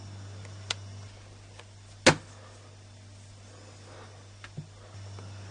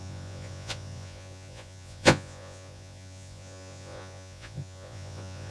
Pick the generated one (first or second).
second